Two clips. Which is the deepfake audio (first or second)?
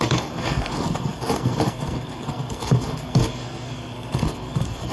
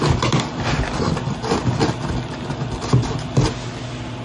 first